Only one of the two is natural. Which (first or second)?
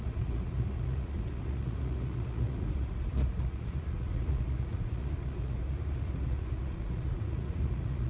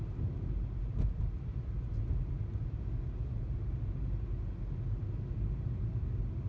second